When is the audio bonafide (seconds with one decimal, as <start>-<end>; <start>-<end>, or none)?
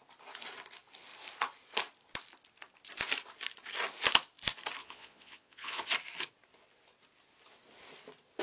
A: 0.0-4.8; 5.9-8.4